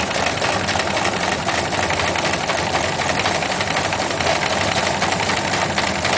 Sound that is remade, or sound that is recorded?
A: recorded